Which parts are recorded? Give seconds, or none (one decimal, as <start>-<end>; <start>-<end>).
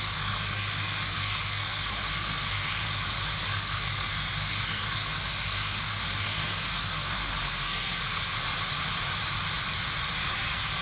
2.8-3.4; 8.4-10.2